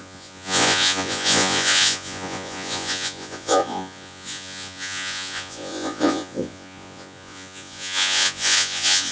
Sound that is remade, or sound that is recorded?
remade